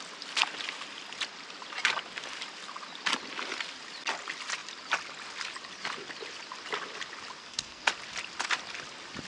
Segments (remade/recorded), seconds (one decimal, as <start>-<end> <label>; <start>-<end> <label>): 0.0-7.4 recorded; 7.4-7.9 remade; 7.9-9.3 recorded